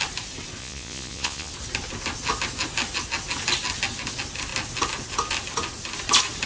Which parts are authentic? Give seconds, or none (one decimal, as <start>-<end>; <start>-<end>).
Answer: 0.0-0.6; 1.5-6.5